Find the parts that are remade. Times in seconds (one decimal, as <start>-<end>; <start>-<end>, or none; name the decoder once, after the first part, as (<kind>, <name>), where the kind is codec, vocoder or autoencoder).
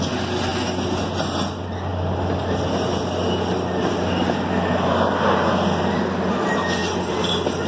none